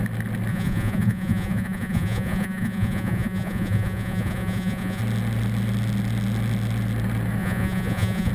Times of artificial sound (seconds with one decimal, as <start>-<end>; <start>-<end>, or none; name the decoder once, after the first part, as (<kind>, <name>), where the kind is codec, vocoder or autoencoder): 0.5-5.0 (vocoder, Vocos); 7.4-8.3